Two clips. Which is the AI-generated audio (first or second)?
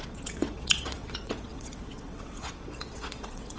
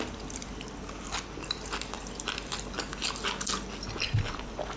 first